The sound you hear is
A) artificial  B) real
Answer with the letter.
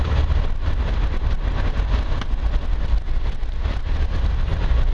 B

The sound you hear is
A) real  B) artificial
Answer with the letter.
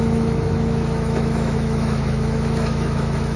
B